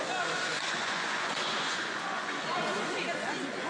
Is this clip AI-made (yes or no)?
yes